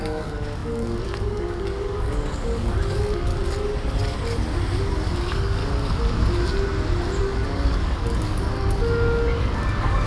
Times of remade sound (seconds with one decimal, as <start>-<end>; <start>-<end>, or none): 0.0-3.3; 4.8-5.6; 7.2-10.1